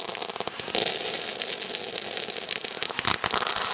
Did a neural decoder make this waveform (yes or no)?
no